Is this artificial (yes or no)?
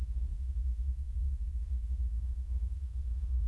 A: yes